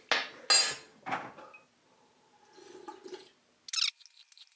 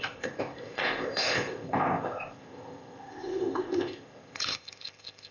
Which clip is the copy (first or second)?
second